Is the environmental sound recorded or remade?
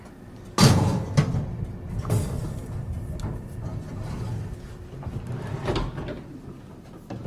recorded